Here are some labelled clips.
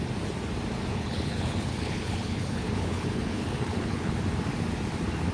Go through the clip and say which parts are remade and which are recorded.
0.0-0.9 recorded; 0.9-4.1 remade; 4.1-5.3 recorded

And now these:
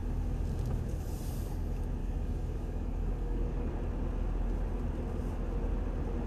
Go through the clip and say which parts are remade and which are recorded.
0.0-2.0 recorded; 2.0-3.7 remade; 3.7-6.3 recorded

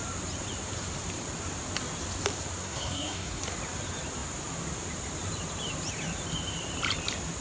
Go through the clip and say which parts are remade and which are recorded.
0.0-2.6 recorded; 2.6-3.4 remade; 3.4-7.4 recorded

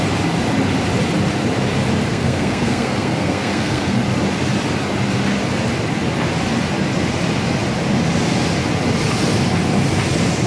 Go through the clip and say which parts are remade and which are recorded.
0.0-2.1 recorded; 2.1-4.0 remade; 4.0-10.5 recorded

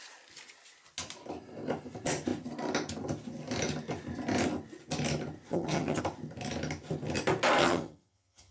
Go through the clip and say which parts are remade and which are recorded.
0.0-5.5 recorded; 5.5-6.0 remade; 6.0-7.6 recorded; 7.6-8.5 remade

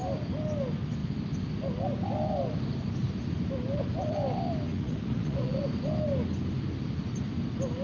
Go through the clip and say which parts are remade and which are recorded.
0.0-4.7 recorded; 4.7-5.6 remade; 5.6-7.8 recorded

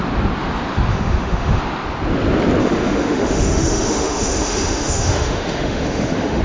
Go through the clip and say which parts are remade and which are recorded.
0.0-0.9 recorded; 0.9-1.6 remade; 1.6-2.6 recorded; 2.6-6.4 remade